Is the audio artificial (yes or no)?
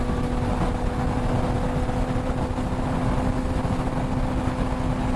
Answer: no